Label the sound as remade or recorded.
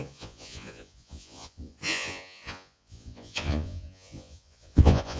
remade